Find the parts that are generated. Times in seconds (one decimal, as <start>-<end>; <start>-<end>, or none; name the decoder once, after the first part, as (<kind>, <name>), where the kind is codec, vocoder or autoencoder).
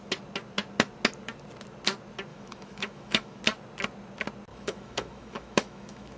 2.3-3.4 (autoencoder, DAC-VAE); 4.5-6.2